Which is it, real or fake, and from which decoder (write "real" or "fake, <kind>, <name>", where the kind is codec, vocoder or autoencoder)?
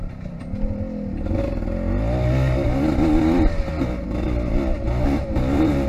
real